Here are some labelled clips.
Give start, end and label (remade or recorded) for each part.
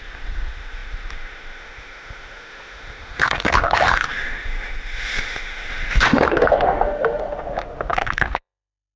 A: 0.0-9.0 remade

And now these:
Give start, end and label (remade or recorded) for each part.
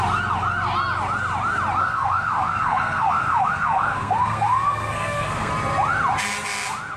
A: 0.0-1.8 recorded; 1.8-5.5 remade; 5.5-7.0 recorded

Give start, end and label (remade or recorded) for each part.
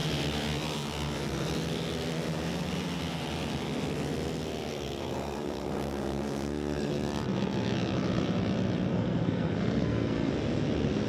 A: 0.0-4.7 recorded; 4.7-6.9 remade; 6.9-8.9 recorded; 8.9-10.3 remade; 10.3-11.1 recorded